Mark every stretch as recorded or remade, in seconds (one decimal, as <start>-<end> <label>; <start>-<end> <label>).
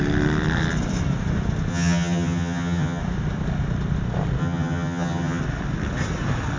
0.0-1.7 recorded; 1.7-3.0 remade; 3.0-4.4 recorded; 4.4-5.4 remade; 5.4-6.6 recorded